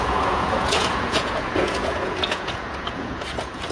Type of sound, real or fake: fake